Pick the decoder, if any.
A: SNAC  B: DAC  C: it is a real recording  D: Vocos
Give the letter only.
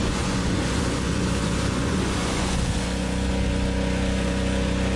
D